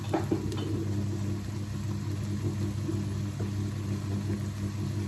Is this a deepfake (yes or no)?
no